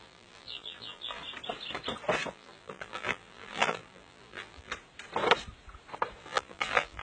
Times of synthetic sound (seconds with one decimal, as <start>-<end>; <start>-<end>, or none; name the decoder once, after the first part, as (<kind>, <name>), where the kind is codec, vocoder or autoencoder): 0.0-1.2 (vocoder, BigVGAN v2); 2.3-4.7; 6.2-7.0